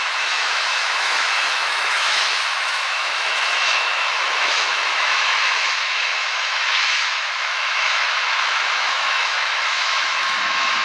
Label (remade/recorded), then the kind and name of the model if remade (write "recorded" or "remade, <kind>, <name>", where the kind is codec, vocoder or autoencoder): remade, autoencoder, DAC-VAE